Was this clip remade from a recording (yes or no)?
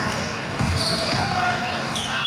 yes